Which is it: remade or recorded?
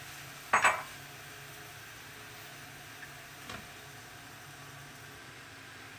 recorded